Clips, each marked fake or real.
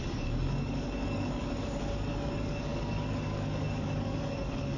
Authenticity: fake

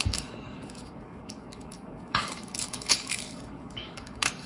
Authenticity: fake